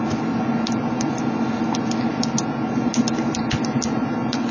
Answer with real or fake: real